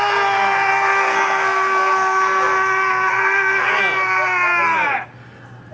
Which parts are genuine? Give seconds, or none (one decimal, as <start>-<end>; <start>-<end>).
0.0-0.7; 3.8-5.7